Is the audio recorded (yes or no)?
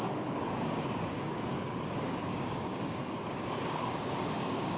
no